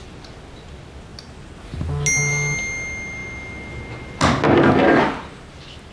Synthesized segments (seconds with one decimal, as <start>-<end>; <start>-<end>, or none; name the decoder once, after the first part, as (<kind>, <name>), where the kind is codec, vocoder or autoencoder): none